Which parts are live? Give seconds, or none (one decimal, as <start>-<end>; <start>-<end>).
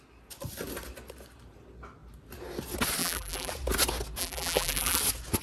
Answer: 0.0-3.0; 3.5-4.2; 5.0-5.4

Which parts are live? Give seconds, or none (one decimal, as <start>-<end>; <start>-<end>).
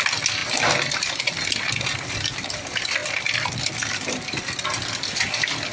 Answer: 0.0-0.4; 1.3-3.0; 3.7-5.7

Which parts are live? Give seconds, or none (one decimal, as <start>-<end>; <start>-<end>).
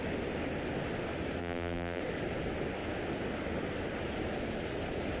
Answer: 0.0-1.4; 2.0-5.2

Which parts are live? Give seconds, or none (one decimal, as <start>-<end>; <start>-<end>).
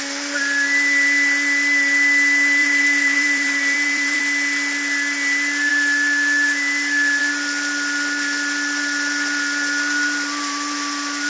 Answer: 0.0-2.6; 4.2-11.3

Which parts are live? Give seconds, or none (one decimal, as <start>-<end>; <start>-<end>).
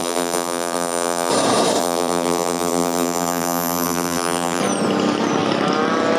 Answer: 1.3-1.8; 4.6-6.2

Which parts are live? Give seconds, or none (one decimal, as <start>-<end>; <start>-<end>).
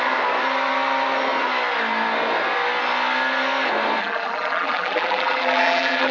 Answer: 0.0-4.0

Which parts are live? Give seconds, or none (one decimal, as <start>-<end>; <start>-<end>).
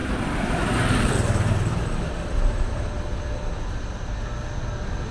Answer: 2.9-5.1